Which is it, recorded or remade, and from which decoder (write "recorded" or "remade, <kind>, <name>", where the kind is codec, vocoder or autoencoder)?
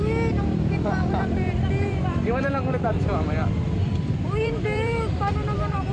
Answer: remade, vocoder, BigVGAN v2